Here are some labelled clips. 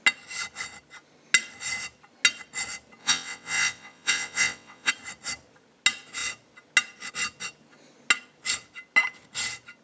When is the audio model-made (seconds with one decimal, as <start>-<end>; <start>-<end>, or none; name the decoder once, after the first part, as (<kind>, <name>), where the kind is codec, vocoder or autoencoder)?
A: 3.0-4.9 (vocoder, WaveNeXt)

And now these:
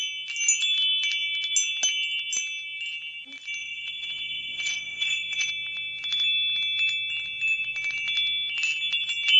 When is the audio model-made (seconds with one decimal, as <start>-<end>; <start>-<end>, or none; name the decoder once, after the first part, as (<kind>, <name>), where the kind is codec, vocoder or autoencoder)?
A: 3.6-5.5 (vocoder, WaveNeXt)

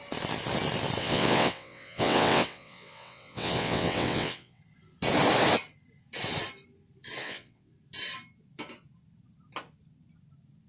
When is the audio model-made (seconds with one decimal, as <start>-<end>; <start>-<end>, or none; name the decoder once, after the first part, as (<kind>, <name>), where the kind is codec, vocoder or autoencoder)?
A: 1.0-4.6 (vocoder, WaveNeXt); 7.2-7.7